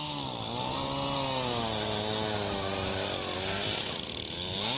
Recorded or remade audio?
recorded